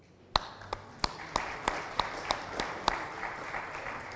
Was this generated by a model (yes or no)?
no